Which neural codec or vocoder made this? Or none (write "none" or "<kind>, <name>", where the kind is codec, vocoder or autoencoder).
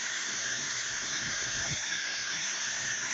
codec, SNAC